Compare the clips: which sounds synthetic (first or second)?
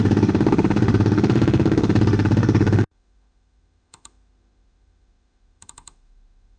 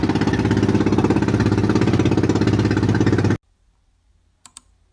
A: first